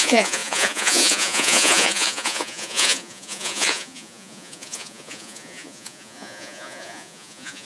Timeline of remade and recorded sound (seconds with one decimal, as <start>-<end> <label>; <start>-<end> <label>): 0.0-7.6 remade

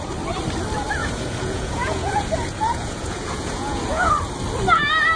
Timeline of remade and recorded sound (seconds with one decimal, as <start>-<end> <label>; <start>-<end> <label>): 0.0-1.0 recorded; 1.0-4.1 remade; 4.1-5.2 recorded

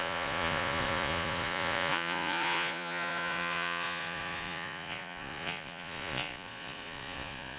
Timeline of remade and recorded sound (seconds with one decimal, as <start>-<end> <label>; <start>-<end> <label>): 0.0-7.6 remade

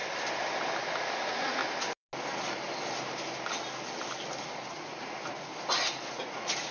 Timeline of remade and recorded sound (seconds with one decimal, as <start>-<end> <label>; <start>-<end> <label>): 0.0-1.1 recorded; 1.1-1.6 remade; 1.6-4.7 recorded; 4.7-5.5 remade; 5.5-6.1 recorded; 6.1-6.7 remade

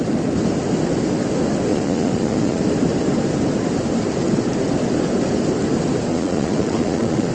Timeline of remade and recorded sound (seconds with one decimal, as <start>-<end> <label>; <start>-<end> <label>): 0.0-1.7 recorded; 1.7-2.6 remade; 2.6-6.1 recorded; 6.1-7.3 remade

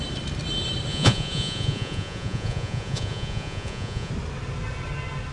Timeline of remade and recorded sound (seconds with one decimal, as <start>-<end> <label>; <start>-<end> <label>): 0.0-0.9 recorded; 0.9-4.1 remade; 4.1-5.3 recorded

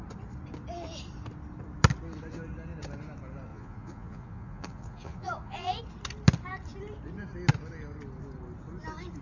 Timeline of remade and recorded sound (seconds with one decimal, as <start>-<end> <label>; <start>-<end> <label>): 0.0-3.5 recorded; 3.5-5.8 remade; 5.8-9.2 recorded

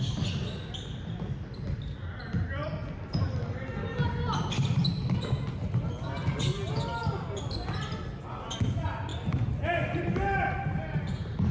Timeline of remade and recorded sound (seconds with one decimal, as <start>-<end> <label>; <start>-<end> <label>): 0.0-11.5 recorded